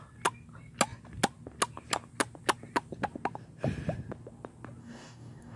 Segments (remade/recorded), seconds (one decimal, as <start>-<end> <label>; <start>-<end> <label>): 0.0-4.8 recorded; 4.8-5.6 remade